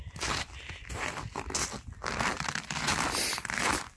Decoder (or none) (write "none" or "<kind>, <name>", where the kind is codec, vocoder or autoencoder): vocoder, BigVGAN v2